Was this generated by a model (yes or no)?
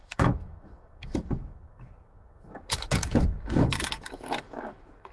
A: yes